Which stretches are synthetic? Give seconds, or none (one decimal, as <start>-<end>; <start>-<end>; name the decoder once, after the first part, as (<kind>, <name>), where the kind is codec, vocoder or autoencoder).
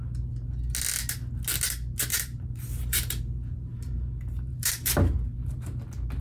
2.1-5.8 (vocoder, BigVGAN v2)